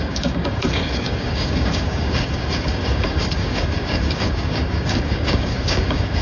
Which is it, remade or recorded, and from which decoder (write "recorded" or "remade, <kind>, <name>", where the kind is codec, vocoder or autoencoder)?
remade, codec, DAC